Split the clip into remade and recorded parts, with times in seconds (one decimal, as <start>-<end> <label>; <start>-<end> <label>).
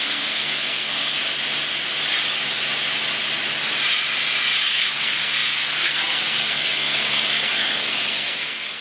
0.0-1.2 remade; 1.2-4.7 recorded; 4.7-8.8 remade